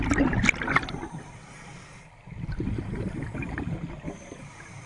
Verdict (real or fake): real